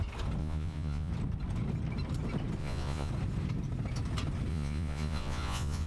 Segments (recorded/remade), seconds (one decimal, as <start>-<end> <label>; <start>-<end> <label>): 0.0-0.4 recorded; 0.4-1.1 remade; 1.1-2.6 recorded; 2.6-3.1 remade; 3.1-4.5 recorded; 4.5-5.9 remade